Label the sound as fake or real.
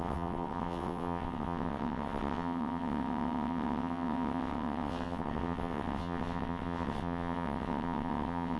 fake